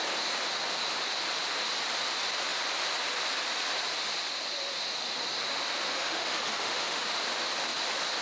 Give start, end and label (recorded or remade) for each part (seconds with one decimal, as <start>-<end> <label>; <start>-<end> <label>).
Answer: 0.0-5.9 recorded; 5.9-7.2 remade; 7.2-8.2 recorded